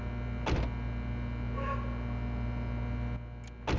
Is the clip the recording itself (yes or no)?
yes